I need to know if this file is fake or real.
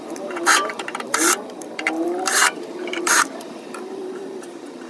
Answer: fake